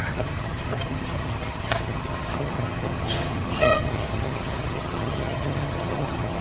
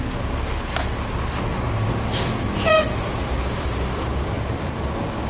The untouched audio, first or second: second